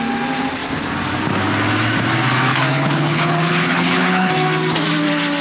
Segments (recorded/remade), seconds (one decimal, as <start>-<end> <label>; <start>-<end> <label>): 0.0-2.5 recorded; 2.5-4.3 remade; 4.3-5.4 recorded